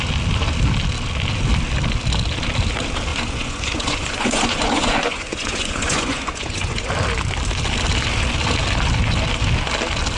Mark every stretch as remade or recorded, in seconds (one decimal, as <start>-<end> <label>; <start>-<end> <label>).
0.0-3.1 recorded; 3.1-6.9 remade; 6.9-10.2 recorded